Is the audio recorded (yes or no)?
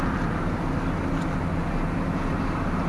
yes